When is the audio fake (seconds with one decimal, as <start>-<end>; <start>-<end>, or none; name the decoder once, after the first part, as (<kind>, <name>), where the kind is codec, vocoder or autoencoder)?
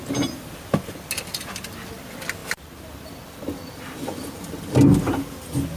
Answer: none